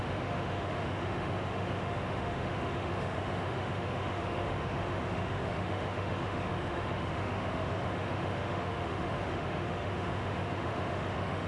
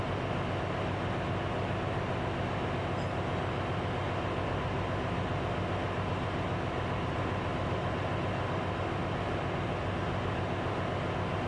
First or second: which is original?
second